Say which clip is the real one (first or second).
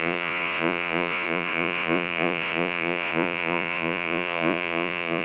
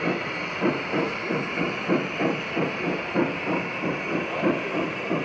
second